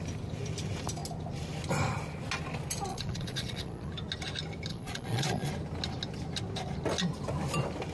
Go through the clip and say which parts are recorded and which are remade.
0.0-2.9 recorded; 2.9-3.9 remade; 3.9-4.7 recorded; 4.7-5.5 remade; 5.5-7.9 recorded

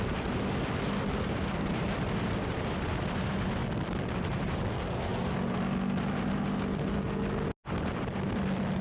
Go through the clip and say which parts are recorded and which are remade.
0.0-8.8 recorded

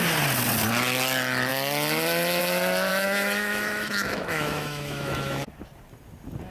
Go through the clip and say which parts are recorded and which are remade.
0.0-2.9 recorded; 2.9-5.4 remade; 5.4-6.5 recorded

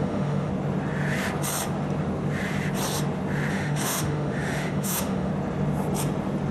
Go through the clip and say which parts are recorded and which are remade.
0.0-0.5 remade; 0.5-3.5 recorded; 3.5-5.3 remade; 5.3-6.5 recorded

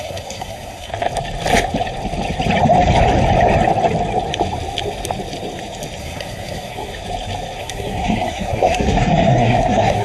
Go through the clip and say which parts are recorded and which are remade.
0.0-0.9 remade; 0.9-6.0 recorded; 6.0-7.0 remade; 7.0-7.6 recorded; 7.6-10.0 remade

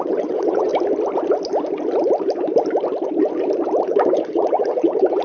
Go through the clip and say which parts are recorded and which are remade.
0.0-0.7 remade; 0.7-3.8 recorded; 3.8-5.2 remade